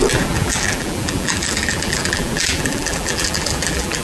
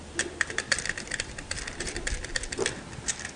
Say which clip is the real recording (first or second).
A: second